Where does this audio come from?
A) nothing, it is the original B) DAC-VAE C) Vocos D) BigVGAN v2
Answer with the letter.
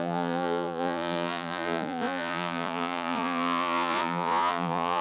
C